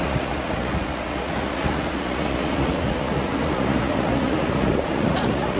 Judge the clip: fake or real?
fake